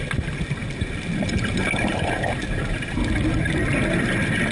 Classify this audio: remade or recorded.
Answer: recorded